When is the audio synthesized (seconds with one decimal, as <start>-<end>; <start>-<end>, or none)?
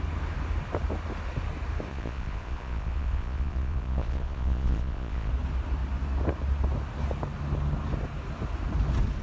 1.9-5.3